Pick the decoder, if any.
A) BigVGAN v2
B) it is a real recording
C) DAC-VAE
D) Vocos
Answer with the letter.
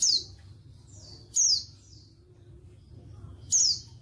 B